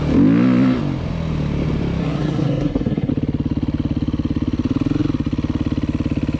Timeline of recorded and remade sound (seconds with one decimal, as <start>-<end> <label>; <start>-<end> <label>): 0.0-2.0 recorded; 2.0-3.1 remade; 3.1-6.4 recorded